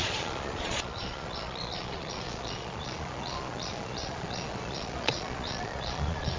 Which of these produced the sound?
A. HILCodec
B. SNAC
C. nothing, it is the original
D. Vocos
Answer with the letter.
D